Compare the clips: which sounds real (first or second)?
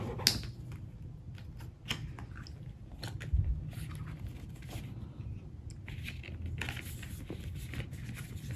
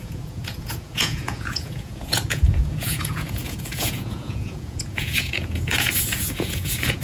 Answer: first